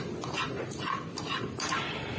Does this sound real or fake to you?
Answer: fake